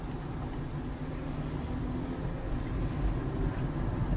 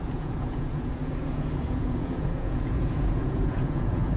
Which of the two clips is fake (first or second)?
second